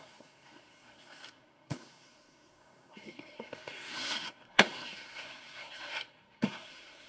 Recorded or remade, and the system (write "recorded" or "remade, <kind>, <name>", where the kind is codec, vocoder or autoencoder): remade, codec, SNAC